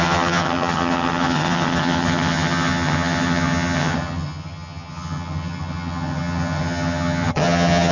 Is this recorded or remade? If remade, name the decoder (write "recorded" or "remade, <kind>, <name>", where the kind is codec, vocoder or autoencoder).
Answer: remade, vocoder, HiFi-GAN